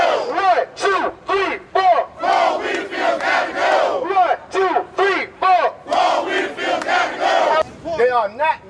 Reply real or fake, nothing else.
real